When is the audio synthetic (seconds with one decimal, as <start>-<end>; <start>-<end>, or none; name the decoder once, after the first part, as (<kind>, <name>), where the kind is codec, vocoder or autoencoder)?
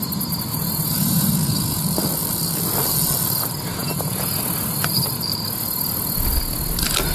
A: 0.5-1.8 (vocoder, Vocos); 3.7-4.4